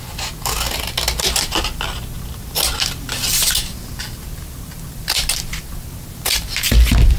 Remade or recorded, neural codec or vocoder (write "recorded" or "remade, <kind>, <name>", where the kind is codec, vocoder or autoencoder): recorded